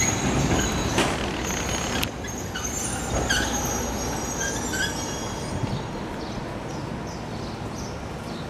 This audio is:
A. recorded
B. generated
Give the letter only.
A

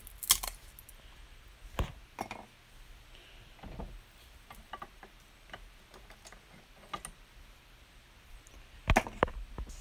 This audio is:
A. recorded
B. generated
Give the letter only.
A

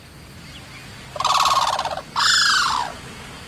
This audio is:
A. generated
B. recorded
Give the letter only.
B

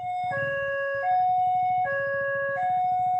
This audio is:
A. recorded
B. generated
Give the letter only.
B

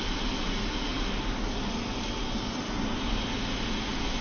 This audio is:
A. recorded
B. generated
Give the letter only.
A